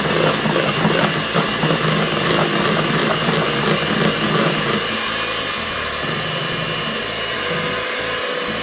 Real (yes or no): yes